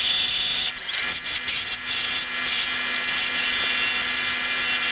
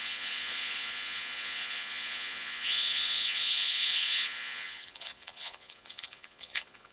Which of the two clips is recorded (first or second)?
first